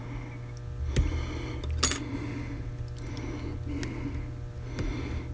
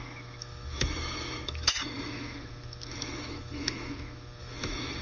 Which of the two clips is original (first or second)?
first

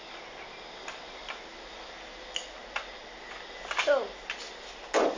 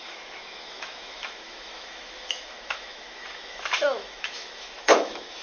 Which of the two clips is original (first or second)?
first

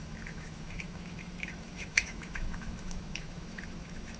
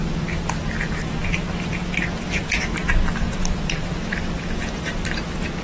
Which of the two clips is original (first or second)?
second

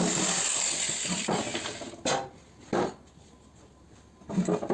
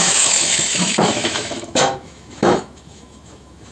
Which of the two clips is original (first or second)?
first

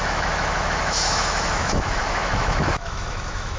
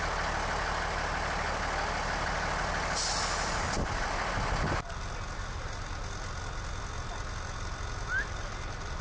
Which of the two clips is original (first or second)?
second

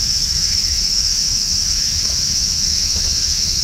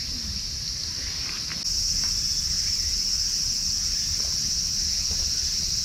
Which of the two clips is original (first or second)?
second